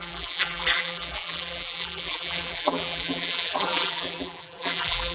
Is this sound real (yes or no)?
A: no